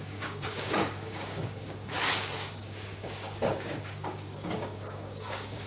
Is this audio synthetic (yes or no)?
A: yes